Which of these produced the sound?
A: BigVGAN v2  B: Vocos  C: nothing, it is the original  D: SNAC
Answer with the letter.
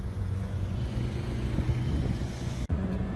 B